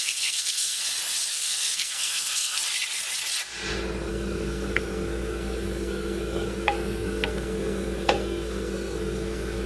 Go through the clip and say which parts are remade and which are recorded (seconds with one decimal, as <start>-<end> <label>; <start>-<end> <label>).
0.0-0.8 remade; 0.8-1.3 recorded; 1.3-2.6 remade; 2.6-4.1 recorded; 4.1-9.7 remade